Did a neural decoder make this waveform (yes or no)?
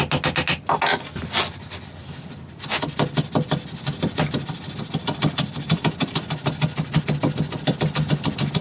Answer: no